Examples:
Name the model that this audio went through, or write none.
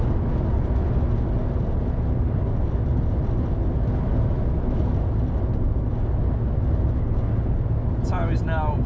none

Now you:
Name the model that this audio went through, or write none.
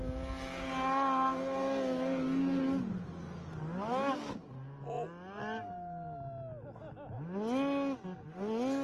none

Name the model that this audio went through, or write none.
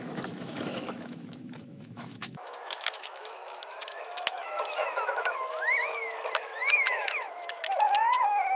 autoencoder, DAC-VAE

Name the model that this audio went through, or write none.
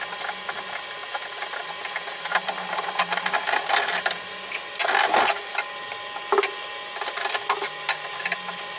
none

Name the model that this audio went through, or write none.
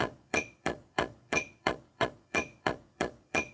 vocoder, Vocos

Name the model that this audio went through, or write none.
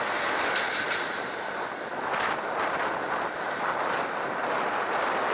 none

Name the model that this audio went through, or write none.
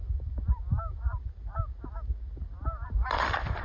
none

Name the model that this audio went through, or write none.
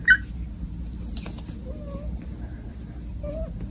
none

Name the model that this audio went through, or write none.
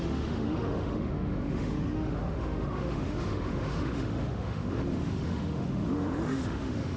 autoencoder, DAC-VAE